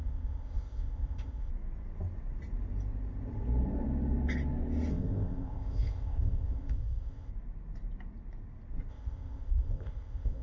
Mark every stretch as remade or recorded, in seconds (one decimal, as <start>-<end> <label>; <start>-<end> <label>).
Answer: 0.0-1.5 remade; 1.5-4.9 recorded; 4.9-7.3 remade; 7.3-8.9 recorded; 8.9-10.4 remade